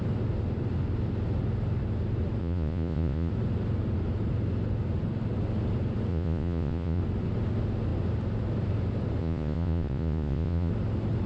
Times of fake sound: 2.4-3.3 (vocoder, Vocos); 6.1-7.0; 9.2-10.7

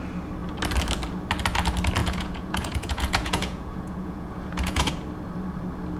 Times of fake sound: 2.0-4.9 (vocoder, Vocos)

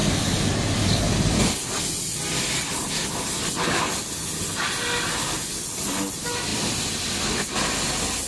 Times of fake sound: none

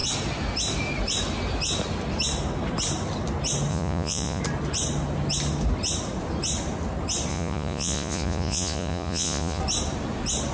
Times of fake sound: 3.7-4.4 (vocoder, Vocos); 7.3-9.6